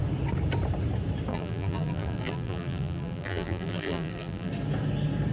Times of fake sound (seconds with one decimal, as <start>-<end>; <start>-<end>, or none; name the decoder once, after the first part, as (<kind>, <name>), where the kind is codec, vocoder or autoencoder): 1.3-4.5 (vocoder, BigVGAN v2)